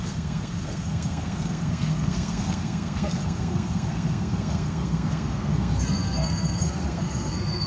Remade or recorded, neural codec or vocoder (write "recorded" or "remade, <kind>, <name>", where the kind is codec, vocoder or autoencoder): remade, codec, SNAC